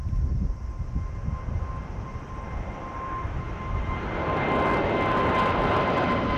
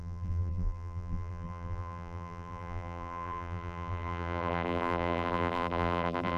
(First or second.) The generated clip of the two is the second